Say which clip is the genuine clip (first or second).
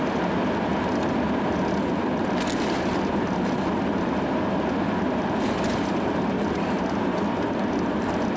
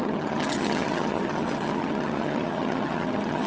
first